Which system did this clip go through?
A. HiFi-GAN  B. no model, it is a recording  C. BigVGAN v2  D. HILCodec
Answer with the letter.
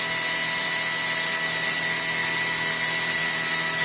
B